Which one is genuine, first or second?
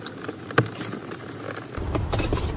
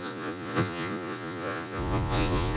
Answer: first